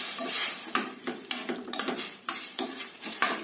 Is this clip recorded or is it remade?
remade